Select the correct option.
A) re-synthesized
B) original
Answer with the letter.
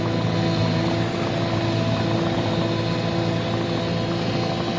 B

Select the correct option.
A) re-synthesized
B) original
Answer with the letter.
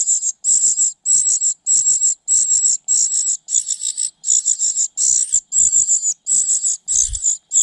B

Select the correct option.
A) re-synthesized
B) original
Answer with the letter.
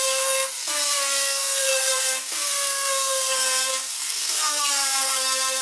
A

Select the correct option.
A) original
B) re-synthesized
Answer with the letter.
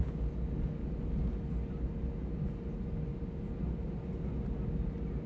A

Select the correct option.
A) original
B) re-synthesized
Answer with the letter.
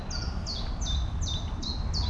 A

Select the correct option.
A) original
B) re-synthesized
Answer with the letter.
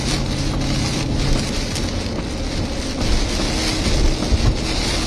A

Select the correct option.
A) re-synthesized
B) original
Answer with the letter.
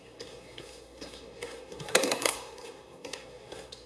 A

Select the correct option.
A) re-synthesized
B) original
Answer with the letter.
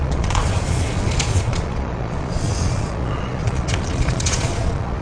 A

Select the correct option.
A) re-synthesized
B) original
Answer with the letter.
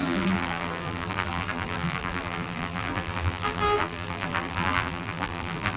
A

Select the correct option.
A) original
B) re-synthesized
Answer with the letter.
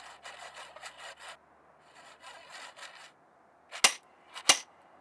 A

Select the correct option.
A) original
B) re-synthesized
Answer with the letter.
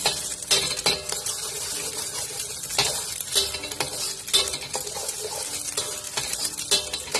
A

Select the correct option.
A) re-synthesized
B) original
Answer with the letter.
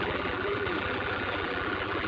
A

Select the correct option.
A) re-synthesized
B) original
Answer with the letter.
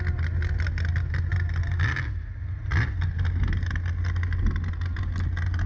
B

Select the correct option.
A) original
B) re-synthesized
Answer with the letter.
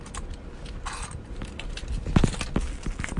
A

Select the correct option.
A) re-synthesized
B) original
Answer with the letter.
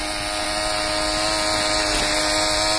B